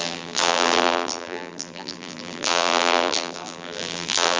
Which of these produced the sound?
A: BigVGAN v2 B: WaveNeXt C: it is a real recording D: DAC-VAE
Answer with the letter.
A